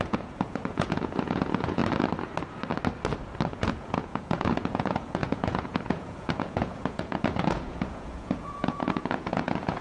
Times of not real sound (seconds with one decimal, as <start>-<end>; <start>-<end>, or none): 0.0-1.8; 3.5-9.8